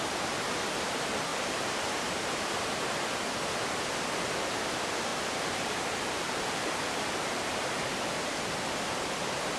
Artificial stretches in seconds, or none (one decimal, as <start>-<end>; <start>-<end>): 1.3-3.2; 5.1-8.9